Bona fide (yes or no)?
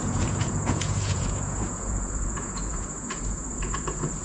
no